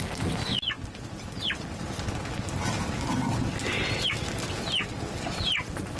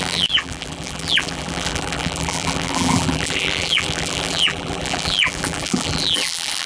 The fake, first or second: second